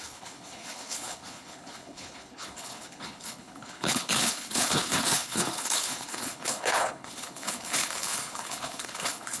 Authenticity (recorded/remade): remade